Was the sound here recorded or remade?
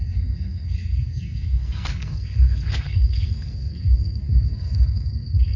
remade